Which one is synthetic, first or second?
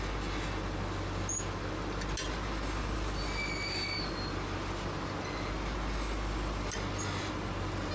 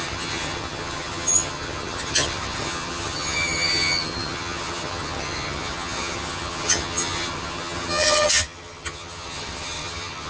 second